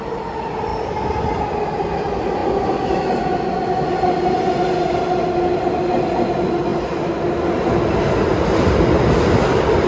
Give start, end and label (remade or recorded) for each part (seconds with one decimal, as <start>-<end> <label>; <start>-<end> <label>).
0.0-9.9 recorded